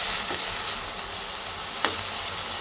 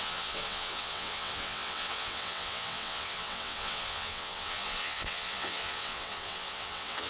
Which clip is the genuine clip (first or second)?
first